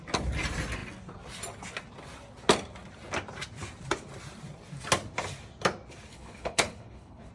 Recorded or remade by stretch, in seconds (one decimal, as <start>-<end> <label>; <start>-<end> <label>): 0.0-6.1 recorded; 6.1-7.3 remade